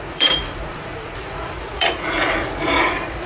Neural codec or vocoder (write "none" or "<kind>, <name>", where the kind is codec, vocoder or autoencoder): vocoder, Vocos